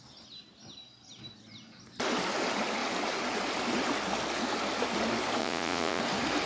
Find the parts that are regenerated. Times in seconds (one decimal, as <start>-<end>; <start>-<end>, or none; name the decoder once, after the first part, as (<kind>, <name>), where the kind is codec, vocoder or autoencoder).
5.4-6.0 (vocoder, Vocos)